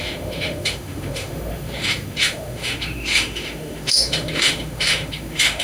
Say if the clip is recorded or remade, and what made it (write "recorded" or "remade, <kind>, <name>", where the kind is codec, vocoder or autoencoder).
remade, autoencoder, DAC-VAE